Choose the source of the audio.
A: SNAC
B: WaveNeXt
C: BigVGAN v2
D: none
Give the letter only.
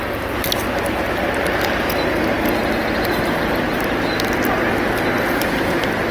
D